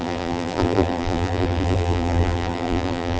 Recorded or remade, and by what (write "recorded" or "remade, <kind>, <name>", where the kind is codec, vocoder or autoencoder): remade, vocoder, BigVGAN v2